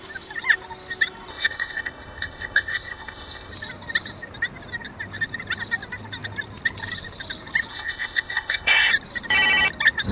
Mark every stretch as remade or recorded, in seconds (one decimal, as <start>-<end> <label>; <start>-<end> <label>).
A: 0.0-1.3 recorded; 1.3-3.5 remade; 3.5-7.7 recorded; 7.7-8.9 remade; 8.9-10.1 recorded